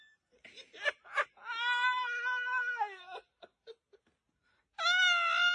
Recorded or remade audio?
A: recorded